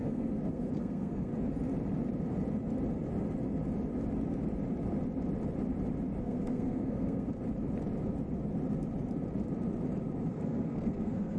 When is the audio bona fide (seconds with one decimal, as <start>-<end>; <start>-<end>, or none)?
1.3-6.2; 7.3-10.3